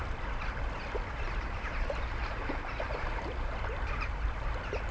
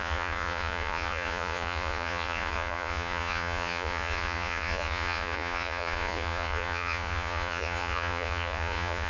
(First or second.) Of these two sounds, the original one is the first